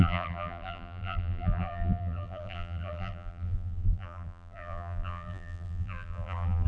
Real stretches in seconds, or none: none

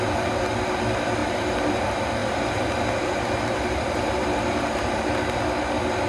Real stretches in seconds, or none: 0.0-2.2; 5.2-6.1

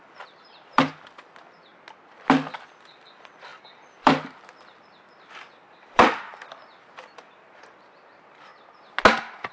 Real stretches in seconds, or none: 1.7-2.7; 8.5-9.5

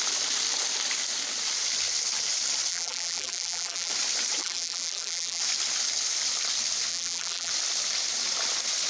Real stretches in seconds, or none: 0.0-2.7; 3.9-4.4; 5.4-6.9; 7.5-8.9